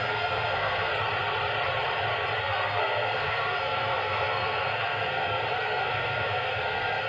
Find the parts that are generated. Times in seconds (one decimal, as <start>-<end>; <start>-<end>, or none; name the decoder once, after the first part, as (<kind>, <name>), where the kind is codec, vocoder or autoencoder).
0.0-0.9 (codec, SNAC); 2.4-7.1